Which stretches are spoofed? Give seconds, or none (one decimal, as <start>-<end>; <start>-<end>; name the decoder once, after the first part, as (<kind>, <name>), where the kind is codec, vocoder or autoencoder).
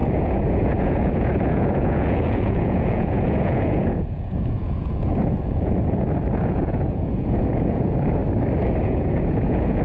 0.0-8.2 (vocoder, Vocos); 8.8-9.8